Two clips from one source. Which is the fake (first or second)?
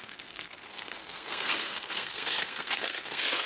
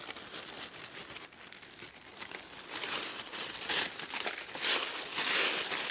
first